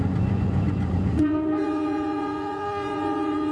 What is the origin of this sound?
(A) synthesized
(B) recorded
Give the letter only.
A